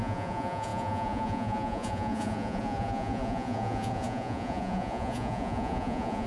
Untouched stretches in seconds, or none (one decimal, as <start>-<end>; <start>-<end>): none